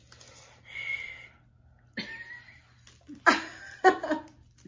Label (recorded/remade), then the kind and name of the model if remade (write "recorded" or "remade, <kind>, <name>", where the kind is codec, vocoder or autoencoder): recorded